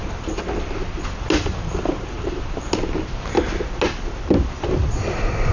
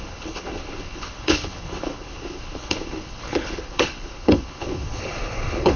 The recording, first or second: first